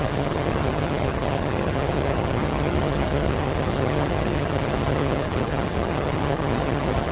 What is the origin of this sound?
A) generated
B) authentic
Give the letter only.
A